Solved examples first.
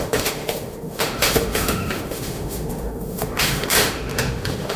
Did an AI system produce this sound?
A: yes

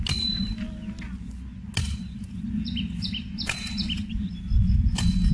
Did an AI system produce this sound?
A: no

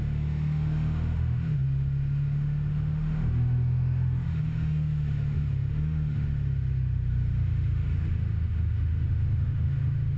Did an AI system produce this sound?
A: yes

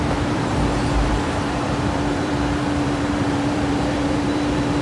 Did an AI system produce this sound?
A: yes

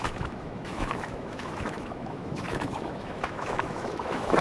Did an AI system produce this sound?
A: yes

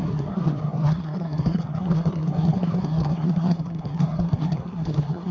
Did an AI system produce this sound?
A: yes